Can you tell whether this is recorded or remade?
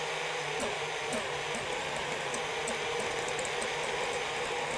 recorded